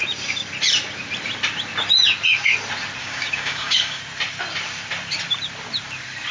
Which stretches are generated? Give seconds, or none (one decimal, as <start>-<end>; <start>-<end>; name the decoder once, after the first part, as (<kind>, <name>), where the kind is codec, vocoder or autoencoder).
3.0-4.0 (codec, DAC)